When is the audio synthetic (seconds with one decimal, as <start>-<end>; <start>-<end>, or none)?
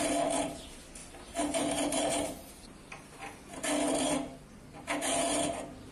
1.0-2.8